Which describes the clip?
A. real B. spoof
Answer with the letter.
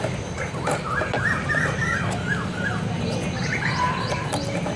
A